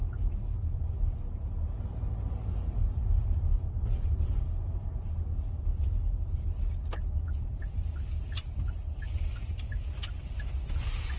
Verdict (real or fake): real